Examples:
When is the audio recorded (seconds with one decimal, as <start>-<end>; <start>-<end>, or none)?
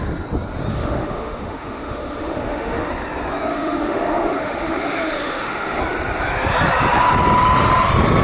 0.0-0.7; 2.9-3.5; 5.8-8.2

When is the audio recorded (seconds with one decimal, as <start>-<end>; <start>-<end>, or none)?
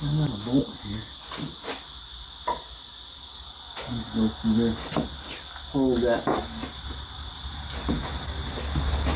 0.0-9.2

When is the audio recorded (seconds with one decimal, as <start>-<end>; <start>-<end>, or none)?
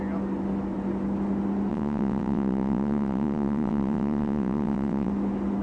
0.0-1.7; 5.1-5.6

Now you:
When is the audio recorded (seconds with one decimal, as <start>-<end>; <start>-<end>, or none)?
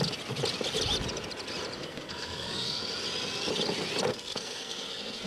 0.0-1.8; 2.8-4.1